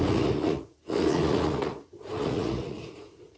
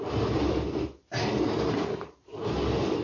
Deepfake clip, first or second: first